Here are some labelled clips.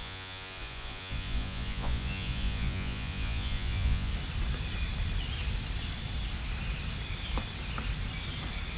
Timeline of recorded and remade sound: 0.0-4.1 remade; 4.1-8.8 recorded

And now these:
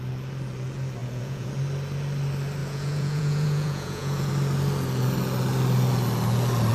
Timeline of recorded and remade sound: 0.0-1.0 recorded; 1.0-1.5 remade; 1.5-2.6 recorded; 2.6-4.3 remade; 4.3-6.7 recorded

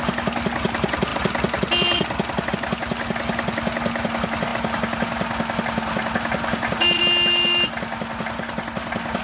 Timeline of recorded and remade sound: 0.0-9.2 recorded

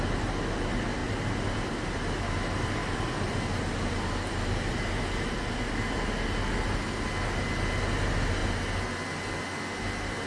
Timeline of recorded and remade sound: 0.0-10.3 recorded

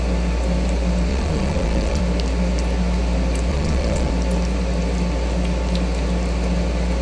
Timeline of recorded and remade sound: 0.0-1.1 recorded; 1.1-2.0 remade; 2.0-3.5 recorded; 3.5-4.1 remade; 4.1-7.0 recorded